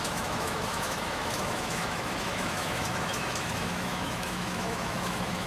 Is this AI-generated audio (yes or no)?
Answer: yes